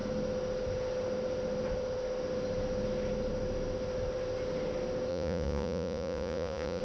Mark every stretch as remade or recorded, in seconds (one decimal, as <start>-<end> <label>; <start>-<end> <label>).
0.0-5.1 recorded; 5.1-6.8 remade